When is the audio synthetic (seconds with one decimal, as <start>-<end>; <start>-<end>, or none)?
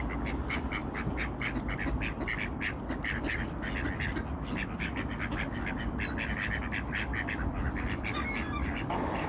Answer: none